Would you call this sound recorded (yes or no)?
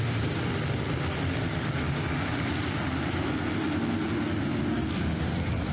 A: yes